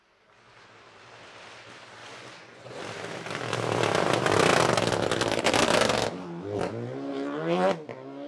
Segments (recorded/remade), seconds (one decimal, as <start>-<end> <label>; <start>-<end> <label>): 0.0-2.0 recorded; 2.0-2.8 remade; 2.8-8.3 recorded

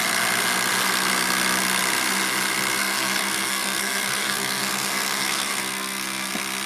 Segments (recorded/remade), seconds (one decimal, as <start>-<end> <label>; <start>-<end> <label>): 0.0-2.8 recorded; 2.8-6.3 remade; 6.3-6.7 recorded